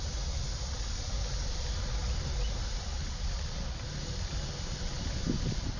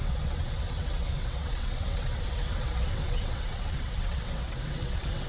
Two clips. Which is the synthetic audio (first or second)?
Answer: second